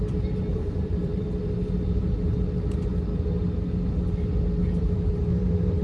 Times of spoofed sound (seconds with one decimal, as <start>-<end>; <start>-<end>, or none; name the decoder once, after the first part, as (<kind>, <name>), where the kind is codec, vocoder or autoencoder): 0.5-1.2 (vocoder, BigVGAN v2); 4.6-5.8